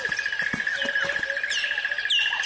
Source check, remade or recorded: recorded